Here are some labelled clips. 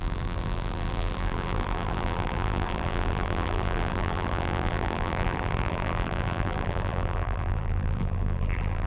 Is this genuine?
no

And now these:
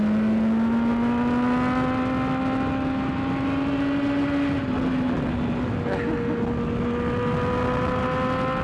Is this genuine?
yes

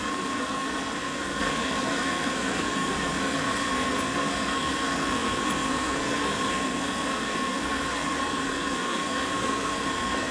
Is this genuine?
no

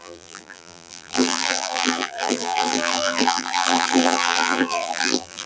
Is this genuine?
no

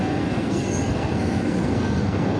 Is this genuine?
no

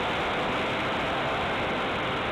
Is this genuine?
yes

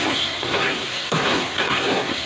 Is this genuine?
no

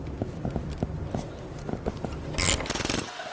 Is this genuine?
yes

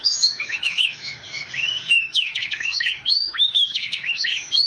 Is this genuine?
no